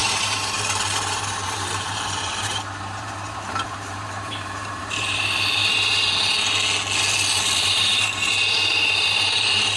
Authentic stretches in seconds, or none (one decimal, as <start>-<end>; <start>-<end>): 5.6-7.6